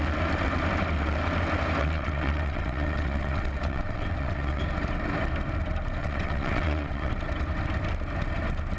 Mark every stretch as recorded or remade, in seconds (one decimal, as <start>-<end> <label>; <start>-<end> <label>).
0.0-1.8 recorded; 1.8-4.6 remade; 4.6-6.0 recorded; 6.0-7.1 remade; 7.1-8.8 recorded